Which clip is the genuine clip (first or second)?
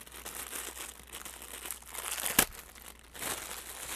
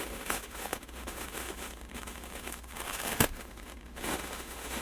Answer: first